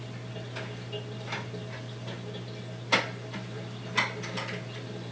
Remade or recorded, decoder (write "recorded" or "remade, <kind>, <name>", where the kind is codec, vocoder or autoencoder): recorded